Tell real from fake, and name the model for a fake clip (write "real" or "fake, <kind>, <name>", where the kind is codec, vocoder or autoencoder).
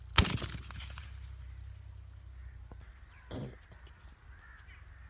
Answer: real